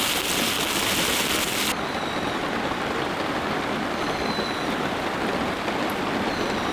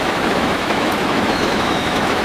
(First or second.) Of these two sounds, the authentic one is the first